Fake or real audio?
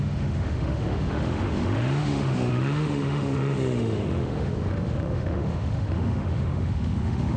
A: fake